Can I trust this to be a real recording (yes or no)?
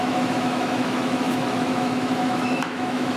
no